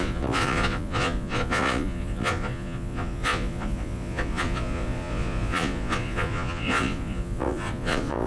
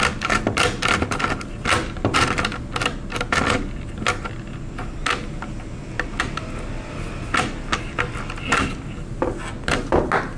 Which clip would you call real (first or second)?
second